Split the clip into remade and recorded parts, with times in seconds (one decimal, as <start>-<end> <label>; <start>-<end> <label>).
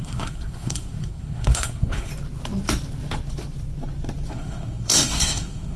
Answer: 0.0-2.1 remade; 2.1-4.3 recorded; 4.3-5.8 remade